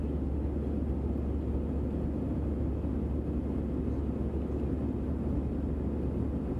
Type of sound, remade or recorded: recorded